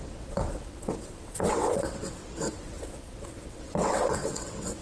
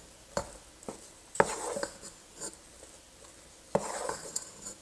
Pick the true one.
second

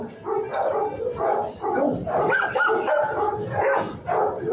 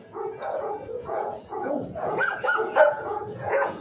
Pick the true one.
first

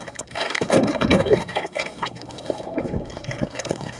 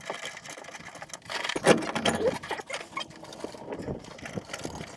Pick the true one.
second